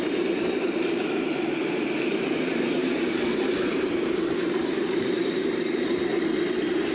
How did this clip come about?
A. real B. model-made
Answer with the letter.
B